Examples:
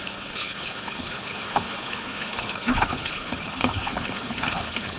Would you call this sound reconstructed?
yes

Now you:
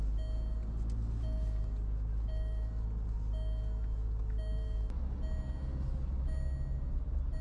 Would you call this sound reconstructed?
no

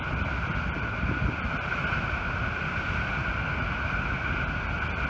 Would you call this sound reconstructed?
no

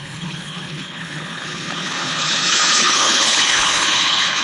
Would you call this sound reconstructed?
yes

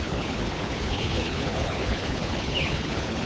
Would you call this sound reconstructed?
yes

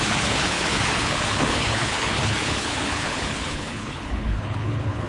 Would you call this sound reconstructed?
yes